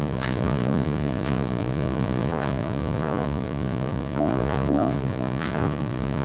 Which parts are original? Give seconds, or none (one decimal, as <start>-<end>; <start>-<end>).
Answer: none

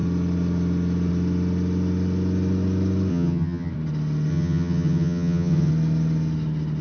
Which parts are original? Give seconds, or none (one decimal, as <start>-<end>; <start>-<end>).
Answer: 0.0-3.1; 3.7-4.3; 5.7-6.8

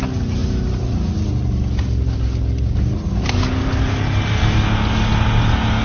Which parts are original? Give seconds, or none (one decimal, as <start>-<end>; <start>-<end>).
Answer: 0.0-5.8

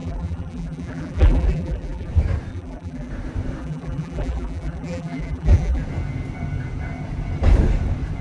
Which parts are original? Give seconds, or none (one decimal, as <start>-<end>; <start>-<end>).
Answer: 2.1-2.5; 3.1-3.6; 5.8-8.2

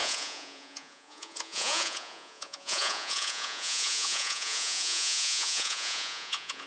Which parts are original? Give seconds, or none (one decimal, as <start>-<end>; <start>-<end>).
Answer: none

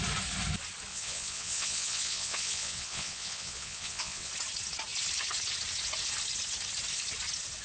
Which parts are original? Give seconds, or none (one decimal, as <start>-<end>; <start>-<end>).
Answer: 0.0-0.9; 4.3-7.6

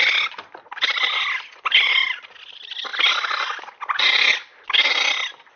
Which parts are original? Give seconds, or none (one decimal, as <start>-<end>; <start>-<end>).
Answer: 0.0-5.6